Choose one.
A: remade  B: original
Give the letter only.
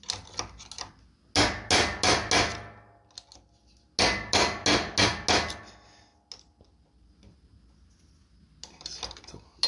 B